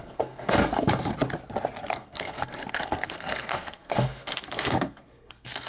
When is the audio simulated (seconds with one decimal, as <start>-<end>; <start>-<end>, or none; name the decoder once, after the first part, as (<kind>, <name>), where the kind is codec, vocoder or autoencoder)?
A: 0.0-1.1 (codec, SNAC); 1.9-5.7

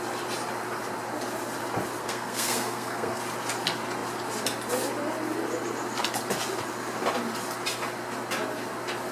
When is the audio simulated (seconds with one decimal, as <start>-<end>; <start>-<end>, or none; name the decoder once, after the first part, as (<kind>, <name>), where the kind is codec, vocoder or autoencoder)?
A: 2.0-3.2 (codec, SNAC)

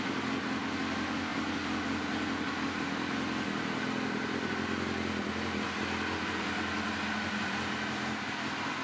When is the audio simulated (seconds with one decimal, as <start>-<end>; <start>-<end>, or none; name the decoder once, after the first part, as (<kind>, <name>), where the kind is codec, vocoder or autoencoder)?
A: none

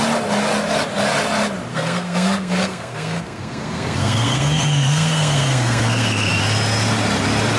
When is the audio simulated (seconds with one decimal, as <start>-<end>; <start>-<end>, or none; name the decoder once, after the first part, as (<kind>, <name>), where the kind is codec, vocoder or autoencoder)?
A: 1.7-6.3 (codec, SNAC)

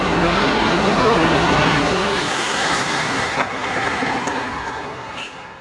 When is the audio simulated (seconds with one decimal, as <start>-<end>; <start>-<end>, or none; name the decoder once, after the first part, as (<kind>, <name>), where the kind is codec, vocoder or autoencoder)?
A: 0.0-5.6 (codec, SNAC)

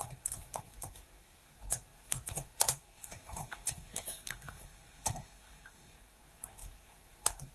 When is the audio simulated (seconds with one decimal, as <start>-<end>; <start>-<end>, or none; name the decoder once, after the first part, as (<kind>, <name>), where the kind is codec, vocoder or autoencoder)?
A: 0.0-7.5 (codec, SNAC)

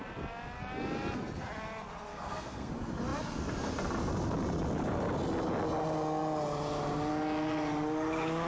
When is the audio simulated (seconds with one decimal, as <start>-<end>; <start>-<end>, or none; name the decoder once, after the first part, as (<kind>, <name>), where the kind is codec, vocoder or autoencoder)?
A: 2.1-2.7 (codec, SNAC)

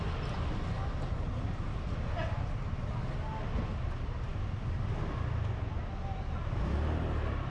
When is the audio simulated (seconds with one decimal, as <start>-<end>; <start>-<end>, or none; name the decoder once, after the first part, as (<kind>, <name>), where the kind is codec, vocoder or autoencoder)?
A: none